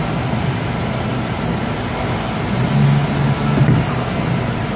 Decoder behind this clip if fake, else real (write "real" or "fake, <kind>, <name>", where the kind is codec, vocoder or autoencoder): real